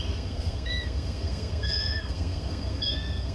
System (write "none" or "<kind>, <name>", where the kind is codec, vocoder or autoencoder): codec, SNAC